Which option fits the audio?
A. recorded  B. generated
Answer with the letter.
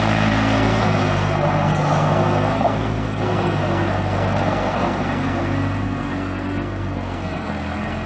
B